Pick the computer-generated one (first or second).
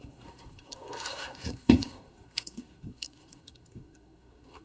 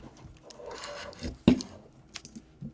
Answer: first